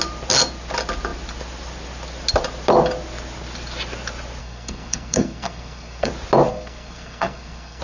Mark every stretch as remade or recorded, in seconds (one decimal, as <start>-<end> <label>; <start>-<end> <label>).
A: 0.0-4.4 recorded; 4.4-6.1 remade; 6.1-6.5 recorded; 6.5-7.8 remade